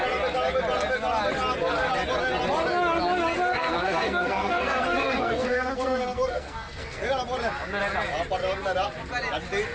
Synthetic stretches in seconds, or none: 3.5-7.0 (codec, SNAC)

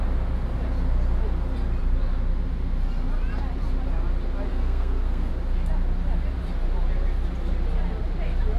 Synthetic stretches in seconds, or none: 4.5-5.3 (codec, SNAC)

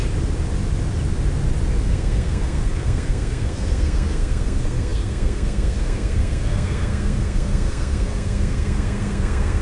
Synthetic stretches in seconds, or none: 1.8-9.6 (codec, SNAC)

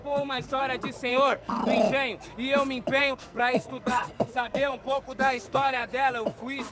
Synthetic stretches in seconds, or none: 0.0-0.6 (codec, SNAC); 1.1-1.6; 3.0-5.8

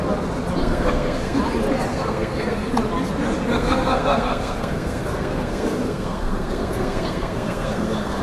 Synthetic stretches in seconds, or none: 0.6-1.4 (codec, SNAC); 1.9-2.7; 3.5-8.2

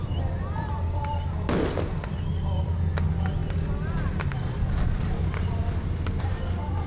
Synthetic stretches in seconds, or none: none

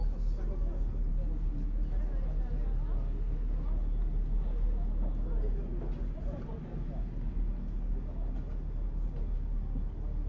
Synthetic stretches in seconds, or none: none